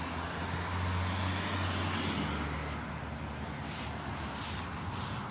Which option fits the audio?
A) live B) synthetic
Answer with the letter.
A